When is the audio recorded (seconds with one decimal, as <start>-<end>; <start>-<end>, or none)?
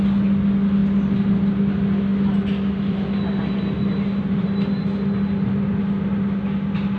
0.0-7.0